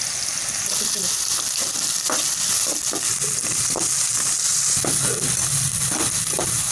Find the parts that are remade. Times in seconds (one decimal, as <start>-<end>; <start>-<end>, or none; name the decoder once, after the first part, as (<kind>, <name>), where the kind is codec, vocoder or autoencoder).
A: 4.5-6.7 (vocoder, BigVGAN v2)